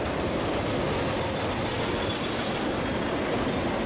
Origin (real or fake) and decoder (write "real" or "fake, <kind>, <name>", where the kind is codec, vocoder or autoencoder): real